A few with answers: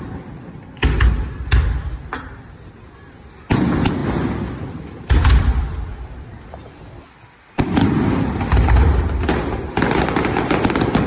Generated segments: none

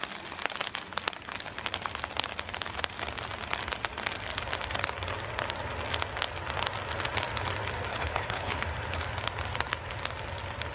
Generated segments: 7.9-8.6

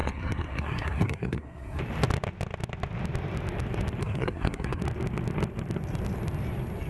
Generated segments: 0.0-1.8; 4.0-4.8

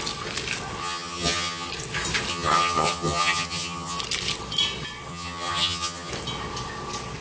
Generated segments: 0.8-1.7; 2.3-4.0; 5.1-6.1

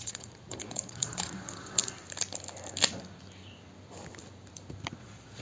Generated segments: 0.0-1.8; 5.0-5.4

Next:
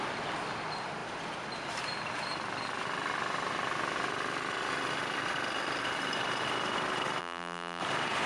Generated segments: 7.2-7.8